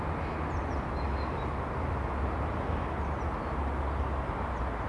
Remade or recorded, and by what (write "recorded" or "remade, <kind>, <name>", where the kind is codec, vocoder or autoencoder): recorded